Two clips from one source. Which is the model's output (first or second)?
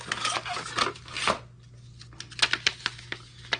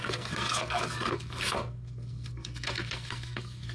second